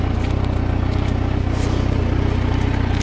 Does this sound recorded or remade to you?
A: recorded